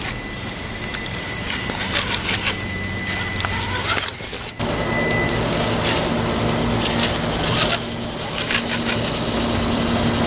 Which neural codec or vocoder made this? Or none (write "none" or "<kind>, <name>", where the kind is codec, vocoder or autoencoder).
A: none